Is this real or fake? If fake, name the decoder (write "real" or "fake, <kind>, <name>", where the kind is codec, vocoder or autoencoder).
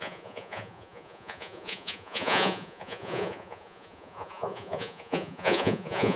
fake, vocoder, Vocos